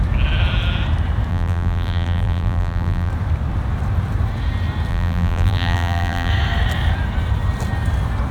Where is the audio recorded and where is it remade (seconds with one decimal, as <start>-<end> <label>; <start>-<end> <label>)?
0.0-1.3 recorded; 1.3-3.1 remade; 3.1-4.9 recorded; 4.9-6.3 remade; 6.3-8.3 recorded